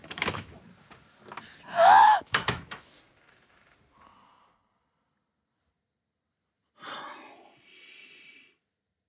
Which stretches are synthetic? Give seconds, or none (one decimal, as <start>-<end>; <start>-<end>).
0.0-0.6; 2.0-2.9